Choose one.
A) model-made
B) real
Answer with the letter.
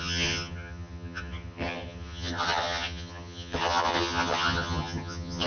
A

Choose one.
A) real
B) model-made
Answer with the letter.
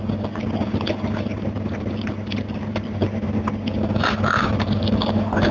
A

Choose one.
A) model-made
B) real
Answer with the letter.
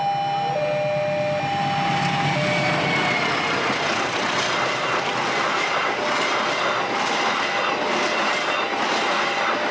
B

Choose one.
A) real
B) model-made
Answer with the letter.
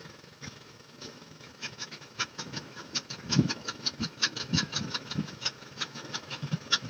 B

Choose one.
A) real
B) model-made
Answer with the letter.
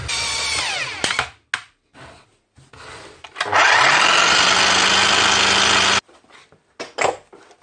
A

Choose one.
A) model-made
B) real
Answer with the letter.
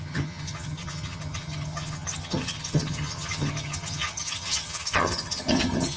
A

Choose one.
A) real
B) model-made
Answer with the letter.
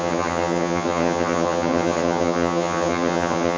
B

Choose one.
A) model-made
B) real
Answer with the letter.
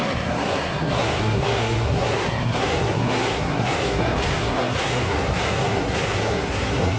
A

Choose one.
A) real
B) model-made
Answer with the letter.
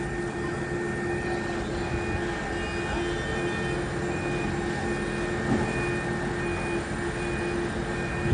A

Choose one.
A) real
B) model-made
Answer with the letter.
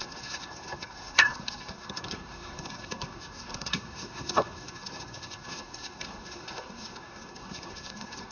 B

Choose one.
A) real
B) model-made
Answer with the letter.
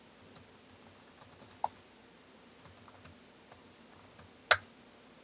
A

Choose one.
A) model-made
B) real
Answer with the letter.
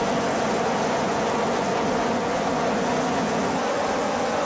A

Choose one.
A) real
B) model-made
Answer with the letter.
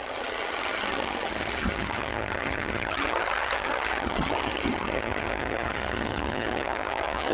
B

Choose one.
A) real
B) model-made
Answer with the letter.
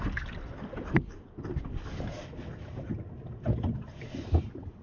A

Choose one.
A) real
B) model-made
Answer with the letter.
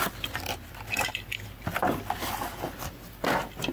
A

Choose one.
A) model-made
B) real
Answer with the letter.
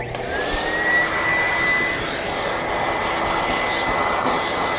B